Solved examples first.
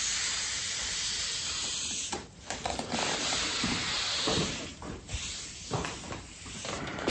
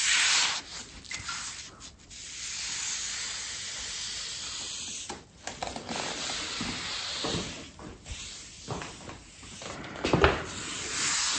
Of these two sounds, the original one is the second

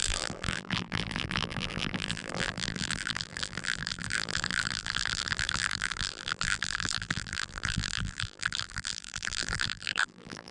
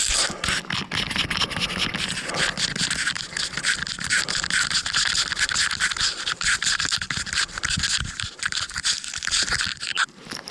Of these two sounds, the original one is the second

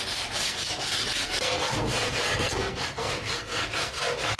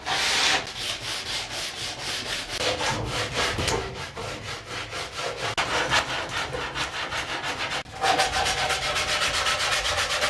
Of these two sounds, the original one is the second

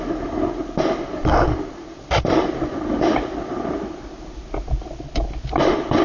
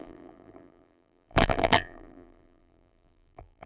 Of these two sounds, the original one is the first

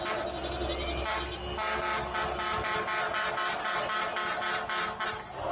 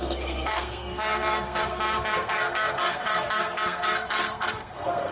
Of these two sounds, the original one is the first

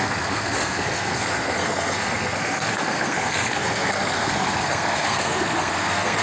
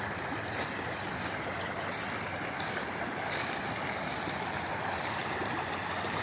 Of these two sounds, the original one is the second